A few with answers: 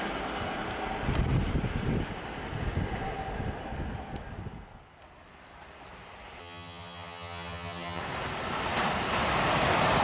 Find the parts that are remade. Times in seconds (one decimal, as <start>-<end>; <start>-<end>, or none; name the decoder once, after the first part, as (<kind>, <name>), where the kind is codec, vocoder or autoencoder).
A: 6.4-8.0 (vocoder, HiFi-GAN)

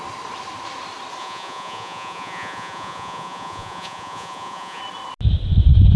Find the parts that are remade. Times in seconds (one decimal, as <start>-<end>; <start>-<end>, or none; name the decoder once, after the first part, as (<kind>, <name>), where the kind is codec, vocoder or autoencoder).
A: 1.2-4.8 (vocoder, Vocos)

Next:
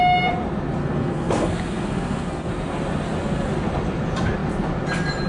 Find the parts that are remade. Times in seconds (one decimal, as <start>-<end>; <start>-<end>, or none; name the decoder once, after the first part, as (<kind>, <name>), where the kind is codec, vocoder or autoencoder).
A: 0.8-2.5 (codec, SNAC)

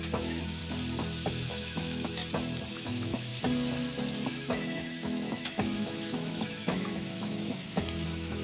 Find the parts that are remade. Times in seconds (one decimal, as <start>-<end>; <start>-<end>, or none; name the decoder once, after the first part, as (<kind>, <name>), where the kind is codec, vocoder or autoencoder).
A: 0.0-0.6 (autoencoder, DAC-VAE); 1.3-2.2; 2.7-3.3; 4.3-8.4

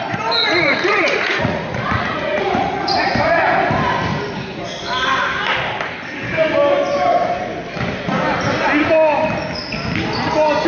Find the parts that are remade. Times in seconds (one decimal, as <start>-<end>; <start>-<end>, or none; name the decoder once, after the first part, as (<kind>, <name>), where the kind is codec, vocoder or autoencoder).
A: 0.4-3.1 (vocoder, Vocos)

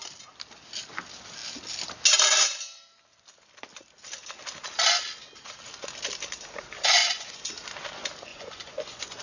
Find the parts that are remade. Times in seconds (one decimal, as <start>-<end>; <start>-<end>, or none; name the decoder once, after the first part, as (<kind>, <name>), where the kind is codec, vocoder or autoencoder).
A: 7.0-7.5 (vocoder, Vocos); 8.3-9.2

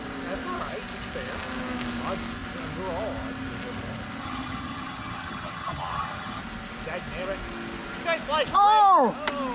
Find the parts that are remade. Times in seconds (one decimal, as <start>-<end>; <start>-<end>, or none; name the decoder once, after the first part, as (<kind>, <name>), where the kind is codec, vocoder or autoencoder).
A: 4.2-6.4 (vocoder, HiFi-GAN)

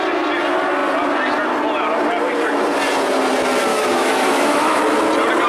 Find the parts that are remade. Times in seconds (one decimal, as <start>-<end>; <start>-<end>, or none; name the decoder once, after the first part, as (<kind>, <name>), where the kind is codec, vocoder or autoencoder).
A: 3.7-4.8 (autoencoder, DAC-VAE)